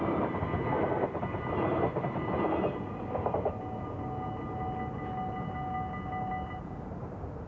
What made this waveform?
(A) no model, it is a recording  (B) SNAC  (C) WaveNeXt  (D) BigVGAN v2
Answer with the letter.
A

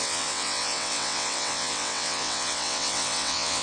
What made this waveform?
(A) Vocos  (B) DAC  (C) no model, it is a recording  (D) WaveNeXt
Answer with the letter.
D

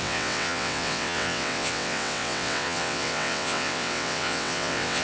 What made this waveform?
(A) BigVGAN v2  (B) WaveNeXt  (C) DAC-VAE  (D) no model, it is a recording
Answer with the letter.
B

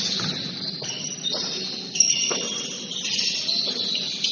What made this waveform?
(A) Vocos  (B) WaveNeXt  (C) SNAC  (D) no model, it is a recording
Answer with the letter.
D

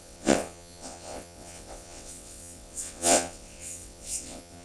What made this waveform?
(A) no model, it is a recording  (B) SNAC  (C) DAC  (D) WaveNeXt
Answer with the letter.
D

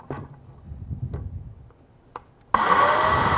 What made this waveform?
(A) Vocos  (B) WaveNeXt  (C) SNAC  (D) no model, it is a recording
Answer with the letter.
D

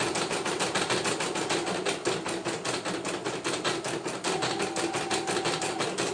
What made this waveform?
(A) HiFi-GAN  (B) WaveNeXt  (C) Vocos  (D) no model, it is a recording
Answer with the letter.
D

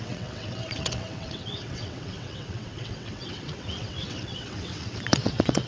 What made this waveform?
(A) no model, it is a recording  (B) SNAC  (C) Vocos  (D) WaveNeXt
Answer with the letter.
D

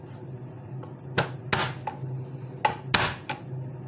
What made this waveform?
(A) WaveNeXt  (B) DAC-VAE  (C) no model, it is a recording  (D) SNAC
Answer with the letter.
C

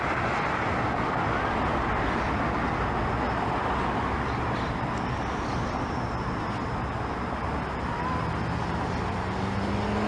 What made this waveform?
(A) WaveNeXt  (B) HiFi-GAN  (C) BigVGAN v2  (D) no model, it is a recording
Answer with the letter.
D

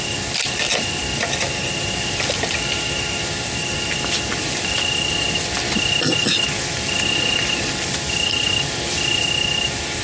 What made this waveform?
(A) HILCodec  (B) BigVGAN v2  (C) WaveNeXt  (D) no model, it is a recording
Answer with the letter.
D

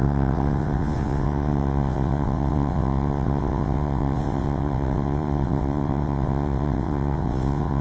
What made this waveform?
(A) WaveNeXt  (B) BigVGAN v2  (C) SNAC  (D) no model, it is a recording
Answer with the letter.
A